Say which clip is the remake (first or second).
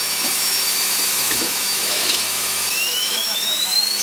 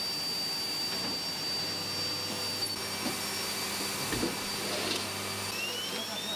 first